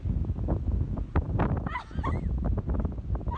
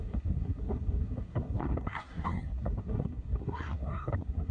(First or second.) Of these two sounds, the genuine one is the first